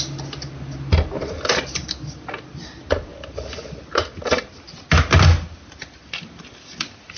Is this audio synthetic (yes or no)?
no